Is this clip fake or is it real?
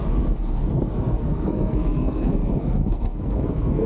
fake